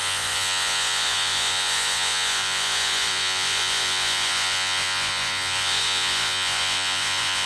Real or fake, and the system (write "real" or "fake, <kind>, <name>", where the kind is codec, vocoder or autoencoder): fake, vocoder, Vocos